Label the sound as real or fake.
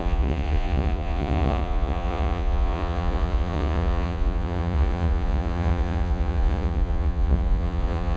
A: fake